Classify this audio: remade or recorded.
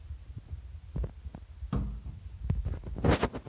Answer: recorded